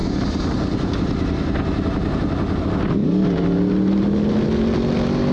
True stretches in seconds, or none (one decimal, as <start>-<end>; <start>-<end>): 0.0-5.3